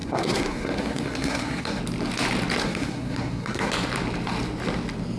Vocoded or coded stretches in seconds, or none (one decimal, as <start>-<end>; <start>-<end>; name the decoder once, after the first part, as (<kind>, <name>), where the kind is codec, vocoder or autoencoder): 0.0-1.8 (codec, SNAC); 2.6-3.7